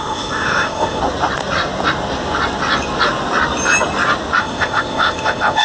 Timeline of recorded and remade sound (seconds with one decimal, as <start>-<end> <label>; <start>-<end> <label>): 0.0-1.0 remade; 1.0-4.4 recorded; 4.4-5.6 remade